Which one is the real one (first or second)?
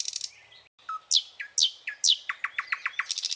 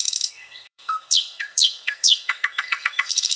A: first